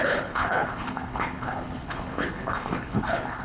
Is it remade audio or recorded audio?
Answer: remade